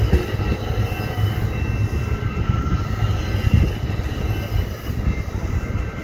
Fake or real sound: real